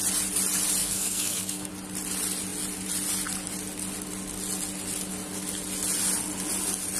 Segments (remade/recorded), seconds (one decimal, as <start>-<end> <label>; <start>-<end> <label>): 0.0-0.8 recorded; 0.8-1.7 remade; 1.7-7.0 recorded